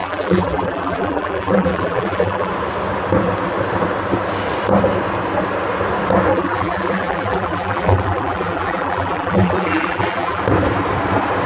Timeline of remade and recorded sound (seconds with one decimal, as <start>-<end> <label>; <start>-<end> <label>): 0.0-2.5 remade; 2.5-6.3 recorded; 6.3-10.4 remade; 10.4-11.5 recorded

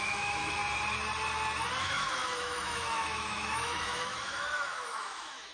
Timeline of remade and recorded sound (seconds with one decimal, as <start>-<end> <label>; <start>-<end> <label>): 0.0-0.6 remade; 0.6-1.8 recorded; 1.8-5.5 remade

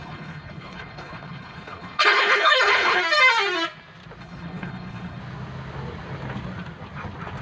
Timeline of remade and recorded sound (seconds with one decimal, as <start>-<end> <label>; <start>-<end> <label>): 0.0-3.0 remade; 3.0-4.2 recorded; 4.2-5.2 remade; 5.2-7.4 recorded

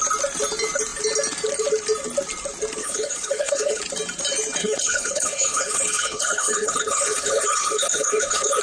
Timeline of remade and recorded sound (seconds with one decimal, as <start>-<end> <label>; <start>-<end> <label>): 0.0-2.8 recorded; 2.8-3.8 remade; 3.8-4.6 recorded; 4.6-8.6 remade

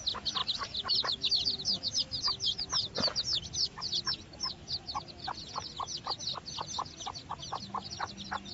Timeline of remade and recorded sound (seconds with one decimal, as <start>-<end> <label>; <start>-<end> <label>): 0.0-0.4 recorded; 0.4-1.1 remade; 1.1-8.5 recorded

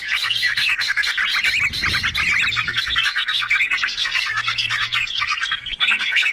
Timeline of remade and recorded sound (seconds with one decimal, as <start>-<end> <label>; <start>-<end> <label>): 0.0-1.2 remade; 1.2-2.5 recorded; 2.5-6.3 remade

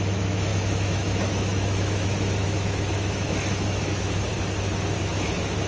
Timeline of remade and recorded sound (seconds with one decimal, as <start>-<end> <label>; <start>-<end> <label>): 0.0-4.3 remade; 4.3-5.0 recorded; 5.0-5.7 remade